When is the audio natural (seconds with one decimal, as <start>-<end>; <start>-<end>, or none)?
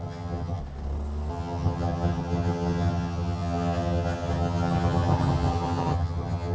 0.6-1.3